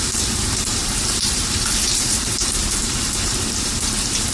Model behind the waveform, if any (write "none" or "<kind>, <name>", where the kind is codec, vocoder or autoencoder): vocoder, BigVGAN v2